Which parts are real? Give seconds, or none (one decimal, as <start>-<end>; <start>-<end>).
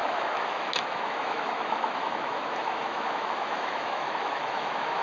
none